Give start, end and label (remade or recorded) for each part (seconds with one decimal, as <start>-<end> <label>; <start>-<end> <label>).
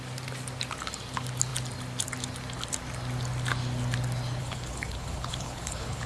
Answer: 0.0-4.4 recorded; 4.4-6.1 remade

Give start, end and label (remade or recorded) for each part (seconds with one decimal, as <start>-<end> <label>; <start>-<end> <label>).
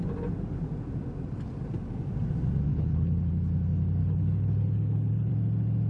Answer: 0.0-2.7 recorded; 2.7-3.3 remade; 3.3-4.0 recorded; 4.0-5.3 remade; 5.3-5.9 recorded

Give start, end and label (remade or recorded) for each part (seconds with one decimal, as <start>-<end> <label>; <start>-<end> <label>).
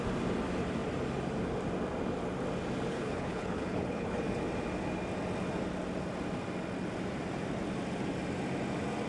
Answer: 0.0-2.9 recorded; 2.9-4.2 remade; 4.2-9.1 recorded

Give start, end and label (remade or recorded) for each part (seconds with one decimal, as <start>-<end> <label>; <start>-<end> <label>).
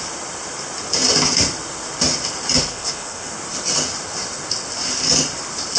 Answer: 0.0-2.7 recorded; 2.7-3.3 remade; 3.3-5.8 recorded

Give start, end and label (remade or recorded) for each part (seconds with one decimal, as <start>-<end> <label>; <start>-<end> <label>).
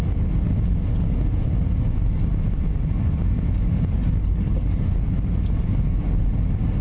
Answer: 0.0-4.2 recorded; 4.2-4.8 remade; 4.8-6.8 recorded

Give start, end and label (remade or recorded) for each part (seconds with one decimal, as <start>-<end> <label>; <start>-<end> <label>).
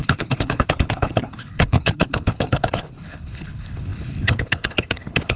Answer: 0.0-5.4 remade